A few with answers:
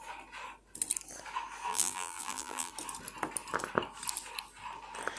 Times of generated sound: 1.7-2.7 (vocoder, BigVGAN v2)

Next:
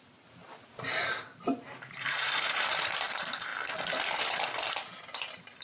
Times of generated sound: 0.0-3.5 (vocoder, BigVGAN v2); 4.2-5.6